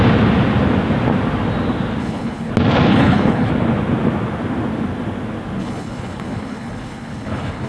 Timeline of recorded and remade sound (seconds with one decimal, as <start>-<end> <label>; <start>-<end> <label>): 0.0-2.0 recorded; 2.0-2.5 remade; 2.5-2.9 recorded; 2.9-3.5 remade; 3.5-5.6 recorded; 5.6-7.7 remade